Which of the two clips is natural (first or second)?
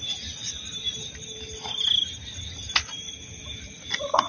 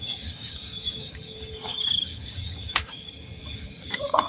first